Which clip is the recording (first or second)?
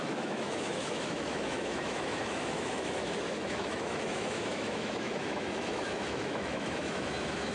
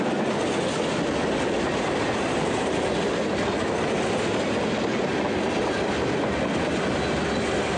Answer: second